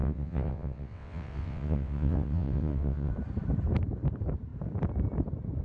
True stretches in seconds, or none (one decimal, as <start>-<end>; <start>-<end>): 3.1-5.6